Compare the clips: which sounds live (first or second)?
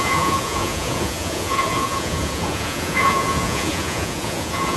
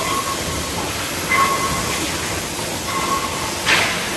second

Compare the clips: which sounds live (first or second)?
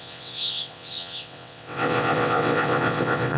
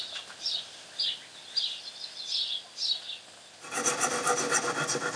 second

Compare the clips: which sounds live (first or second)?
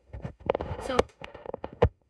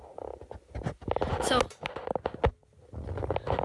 second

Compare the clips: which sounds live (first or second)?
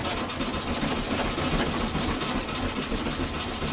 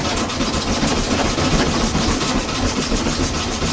first